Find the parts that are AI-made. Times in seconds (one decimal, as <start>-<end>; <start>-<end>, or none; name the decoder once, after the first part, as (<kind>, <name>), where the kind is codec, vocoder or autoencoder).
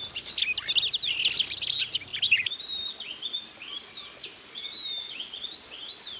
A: 2.1-5.4 (vocoder, BigVGAN v2)